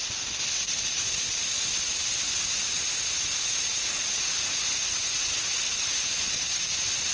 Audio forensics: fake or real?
real